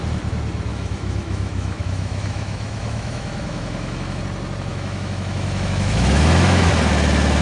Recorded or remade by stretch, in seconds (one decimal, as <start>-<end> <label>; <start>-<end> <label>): 0.0-0.7 recorded; 0.7-4.2 remade; 4.2-4.7 recorded; 4.7-6.7 remade; 6.7-7.4 recorded